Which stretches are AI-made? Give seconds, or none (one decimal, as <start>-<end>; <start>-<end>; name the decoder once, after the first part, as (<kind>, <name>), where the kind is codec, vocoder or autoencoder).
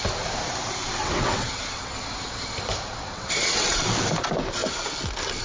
1.0-1.9 (vocoder, WaveNeXt); 3.0-3.8